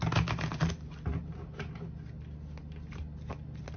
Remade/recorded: recorded